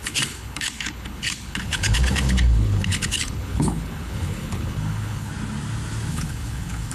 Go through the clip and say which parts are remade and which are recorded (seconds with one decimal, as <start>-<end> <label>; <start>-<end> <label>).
0.0-5.3 remade; 5.3-6.1 recorded; 6.1-6.9 remade

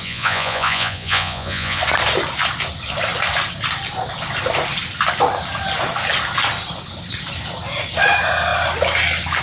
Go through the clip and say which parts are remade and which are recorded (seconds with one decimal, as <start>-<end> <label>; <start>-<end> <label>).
0.0-1.8 remade; 1.8-9.4 recorded